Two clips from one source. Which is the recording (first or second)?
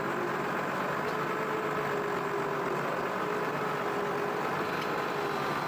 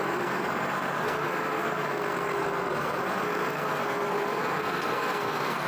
first